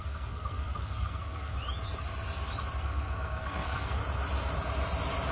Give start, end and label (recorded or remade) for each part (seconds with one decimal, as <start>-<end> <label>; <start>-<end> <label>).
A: 0.0-1.5 remade; 1.5-2.8 recorded; 2.8-4.0 remade; 4.0-5.3 recorded